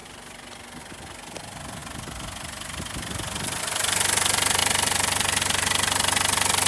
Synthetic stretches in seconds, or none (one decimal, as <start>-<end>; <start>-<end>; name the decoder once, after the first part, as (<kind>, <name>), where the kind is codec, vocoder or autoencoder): 0.0-0.8 (vocoder, BigVGAN v2); 4.6-5.4